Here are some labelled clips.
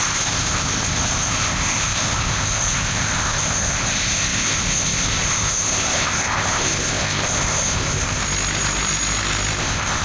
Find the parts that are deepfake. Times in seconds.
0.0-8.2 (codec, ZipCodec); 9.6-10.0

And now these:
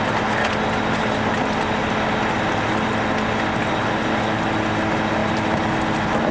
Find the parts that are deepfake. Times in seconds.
none

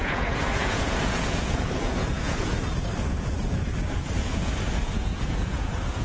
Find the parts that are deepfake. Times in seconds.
0.0-2.5 (vocoder, Vocos); 3.1-3.7; 4.2-6.0

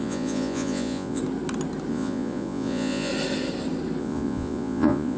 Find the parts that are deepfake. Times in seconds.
0.0-1.2 (vocoder, Vocos); 1.9-3.1; 4.0-5.2

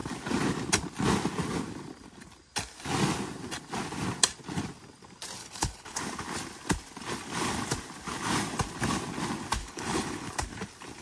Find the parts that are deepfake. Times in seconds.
5.4-6.0 (codec, HILCodec); 9.6-10.3

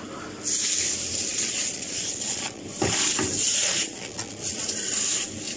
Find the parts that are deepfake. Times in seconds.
1.3-2.6 (vocoder, Vocos); 3.4-4.7

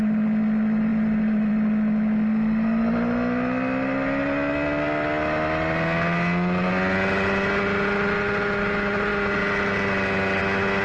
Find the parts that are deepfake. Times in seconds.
none

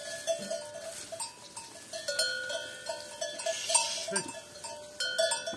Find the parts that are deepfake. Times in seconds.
none